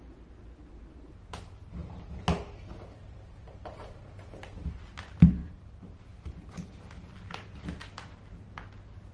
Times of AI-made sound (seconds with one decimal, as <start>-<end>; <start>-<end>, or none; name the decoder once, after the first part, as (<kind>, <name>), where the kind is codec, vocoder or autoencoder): none